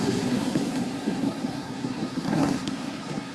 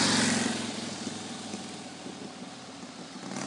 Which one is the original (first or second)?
second